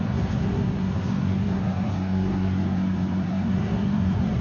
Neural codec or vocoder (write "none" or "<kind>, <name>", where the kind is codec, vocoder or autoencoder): codec, SNAC